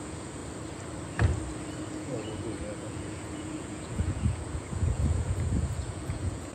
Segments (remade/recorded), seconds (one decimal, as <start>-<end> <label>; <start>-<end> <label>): 0.0-0.4 remade; 0.4-1.9 recorded; 1.9-6.5 remade